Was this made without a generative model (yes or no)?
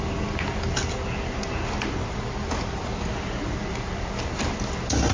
yes